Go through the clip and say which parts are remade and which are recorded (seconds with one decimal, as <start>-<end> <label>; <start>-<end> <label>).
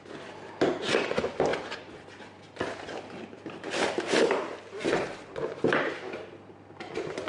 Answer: 0.0-1.5 recorded; 1.5-5.9 remade; 5.9-7.3 recorded